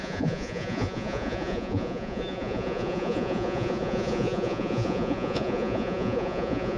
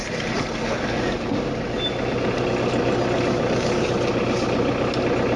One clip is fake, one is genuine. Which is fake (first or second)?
first